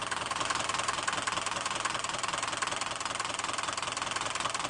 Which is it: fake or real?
real